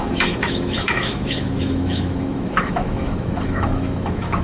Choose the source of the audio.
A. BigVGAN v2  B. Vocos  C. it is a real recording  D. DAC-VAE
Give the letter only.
D